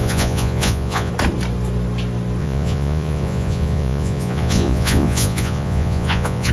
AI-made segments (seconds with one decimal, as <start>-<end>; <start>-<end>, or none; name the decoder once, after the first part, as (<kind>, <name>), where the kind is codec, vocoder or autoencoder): 0.0-1.1 (vocoder, Vocos); 2.4-6.5